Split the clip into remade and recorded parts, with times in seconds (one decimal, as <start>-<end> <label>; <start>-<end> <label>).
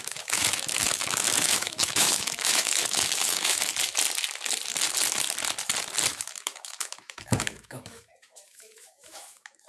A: 0.0-3.7 remade; 3.7-6.1 recorded; 6.1-9.7 remade